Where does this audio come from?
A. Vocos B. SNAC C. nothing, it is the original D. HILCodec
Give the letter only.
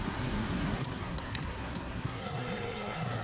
B